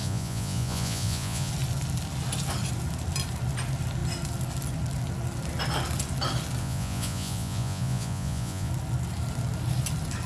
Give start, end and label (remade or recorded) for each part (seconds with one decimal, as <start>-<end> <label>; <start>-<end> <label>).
0.0-1.5 remade; 1.5-6.6 recorded; 6.6-8.7 remade; 8.7-10.3 recorded